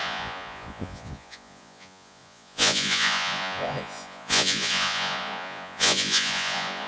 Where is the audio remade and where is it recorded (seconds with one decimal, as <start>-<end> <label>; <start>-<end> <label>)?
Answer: 0.0-6.9 remade